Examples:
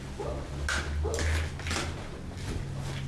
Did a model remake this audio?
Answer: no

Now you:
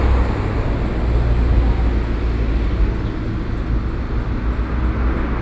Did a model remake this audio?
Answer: no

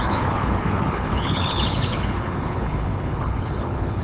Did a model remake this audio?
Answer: yes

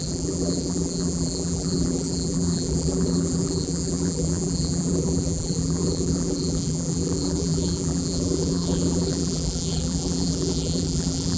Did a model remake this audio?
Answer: yes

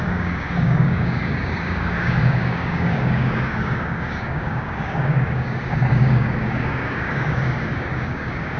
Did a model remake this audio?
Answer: yes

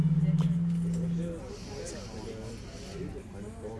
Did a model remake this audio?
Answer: no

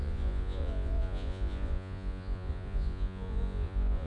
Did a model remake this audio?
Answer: yes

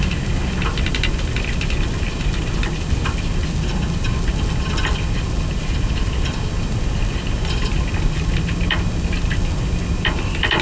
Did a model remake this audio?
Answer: no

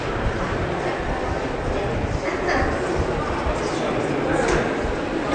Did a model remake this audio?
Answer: no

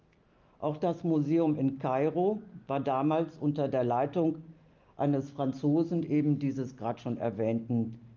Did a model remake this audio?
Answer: no